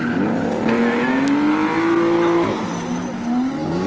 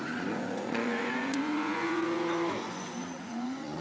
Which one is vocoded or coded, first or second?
second